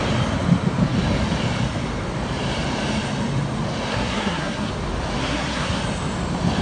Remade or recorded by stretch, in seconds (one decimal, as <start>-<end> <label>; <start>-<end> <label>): 0.0-3.9 recorded; 3.9-4.7 remade; 4.7-5.2 recorded; 5.2-5.8 remade; 5.8-6.6 recorded